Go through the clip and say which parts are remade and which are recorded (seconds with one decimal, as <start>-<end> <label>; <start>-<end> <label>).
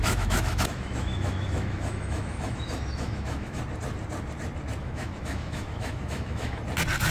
0.0-3.6 remade; 3.6-4.8 recorded; 4.8-6.6 remade; 6.6-7.1 recorded